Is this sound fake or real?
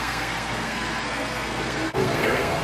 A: fake